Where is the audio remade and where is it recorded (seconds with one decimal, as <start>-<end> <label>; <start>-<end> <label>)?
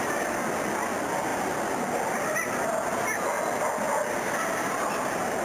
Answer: 0.0-5.4 recorded